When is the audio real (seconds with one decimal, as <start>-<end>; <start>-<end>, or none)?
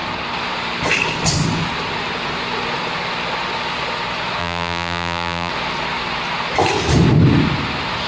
0.0-4.4; 5.5-8.1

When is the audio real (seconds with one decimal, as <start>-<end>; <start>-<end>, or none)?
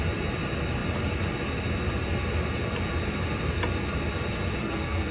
0.0-4.6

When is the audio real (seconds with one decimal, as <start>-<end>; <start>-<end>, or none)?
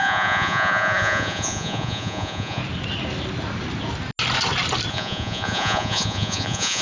2.6-4.9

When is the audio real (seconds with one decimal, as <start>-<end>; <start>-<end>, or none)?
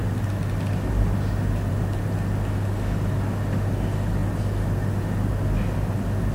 0.0-6.3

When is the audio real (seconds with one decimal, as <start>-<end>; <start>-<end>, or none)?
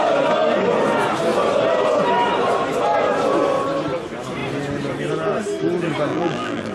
0.0-6.1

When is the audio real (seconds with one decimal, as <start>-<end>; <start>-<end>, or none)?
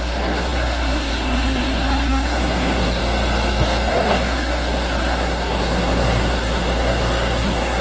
3.0-3.9